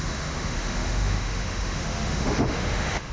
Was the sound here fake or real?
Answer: fake